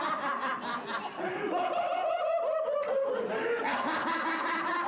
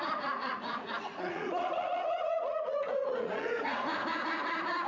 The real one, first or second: first